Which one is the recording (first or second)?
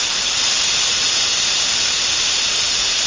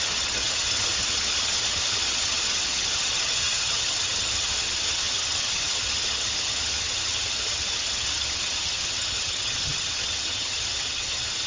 first